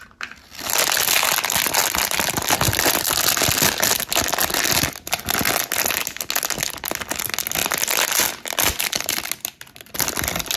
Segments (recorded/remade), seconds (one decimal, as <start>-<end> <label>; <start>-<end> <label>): 0.0-7.6 recorded; 7.6-9.2 remade; 9.2-10.6 recorded